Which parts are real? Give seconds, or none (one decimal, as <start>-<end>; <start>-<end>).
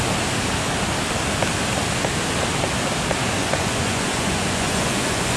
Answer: 0.0-3.4